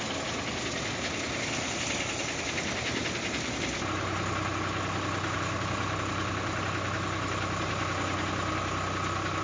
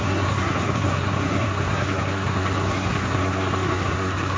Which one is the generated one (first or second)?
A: second